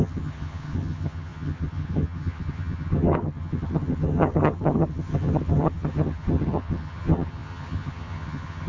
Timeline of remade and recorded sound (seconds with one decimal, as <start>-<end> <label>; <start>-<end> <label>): 0.0-8.7 remade